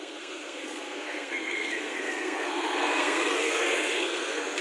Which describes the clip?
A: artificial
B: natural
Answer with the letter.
A